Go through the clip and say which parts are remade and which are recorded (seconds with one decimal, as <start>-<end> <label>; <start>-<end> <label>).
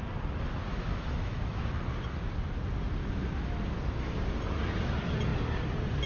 0.0-0.7 recorded; 0.7-1.9 remade; 1.9-3.0 recorded; 3.0-4.1 remade; 4.1-6.1 recorded